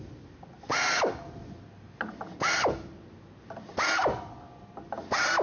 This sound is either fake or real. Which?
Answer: real